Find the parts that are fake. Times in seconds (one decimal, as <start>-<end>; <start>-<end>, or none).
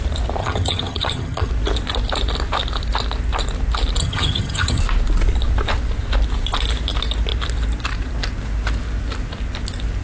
0.4-1.5; 4.0-4.8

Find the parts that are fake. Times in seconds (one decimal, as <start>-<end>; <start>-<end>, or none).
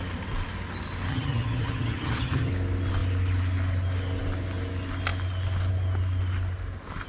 1.1-2.5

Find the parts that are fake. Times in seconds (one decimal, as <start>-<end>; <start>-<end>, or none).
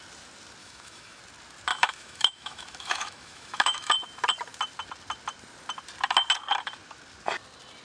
0.6-1.2; 1.7-3.9